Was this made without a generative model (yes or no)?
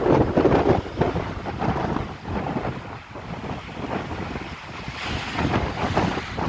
yes